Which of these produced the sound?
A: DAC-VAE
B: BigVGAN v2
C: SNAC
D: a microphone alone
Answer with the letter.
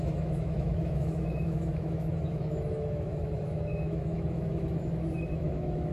A